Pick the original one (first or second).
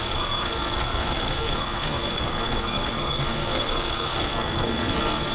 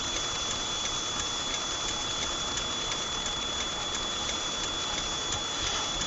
second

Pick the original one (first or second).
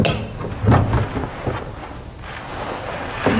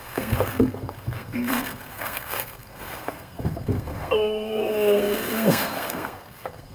first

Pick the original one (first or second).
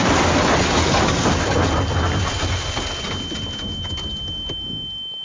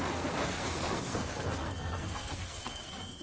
first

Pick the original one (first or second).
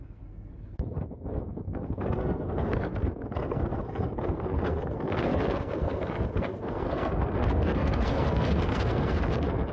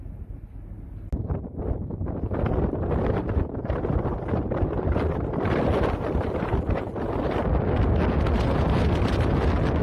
second